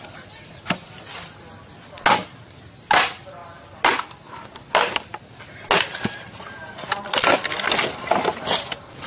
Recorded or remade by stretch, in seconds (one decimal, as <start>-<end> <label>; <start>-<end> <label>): 0.0-9.1 recorded